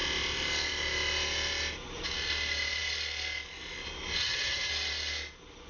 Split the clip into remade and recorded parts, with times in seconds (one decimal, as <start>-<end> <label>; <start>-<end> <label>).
0.0-4.2 recorded; 4.2-4.7 remade; 4.7-5.7 recorded